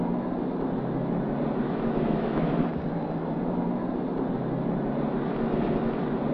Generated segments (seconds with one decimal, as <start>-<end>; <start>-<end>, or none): 1.6-2.5

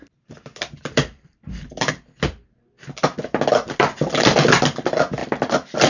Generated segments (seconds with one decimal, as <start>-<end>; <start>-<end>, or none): 0.5-1.9

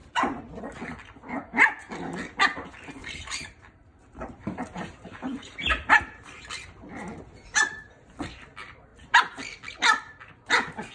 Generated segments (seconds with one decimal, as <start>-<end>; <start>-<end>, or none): 0.0-0.6; 3.0-7.2

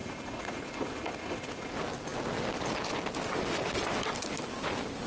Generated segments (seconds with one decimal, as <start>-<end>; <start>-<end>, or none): 0.0-1.7

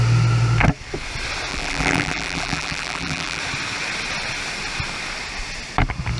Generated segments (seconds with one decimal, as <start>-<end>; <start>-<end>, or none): 1.5-3.4

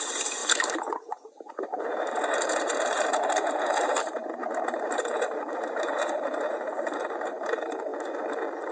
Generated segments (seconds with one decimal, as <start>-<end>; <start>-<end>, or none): 0.0-7.9